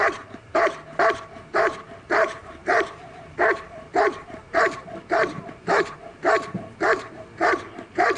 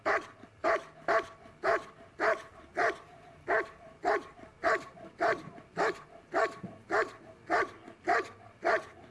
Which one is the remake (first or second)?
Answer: first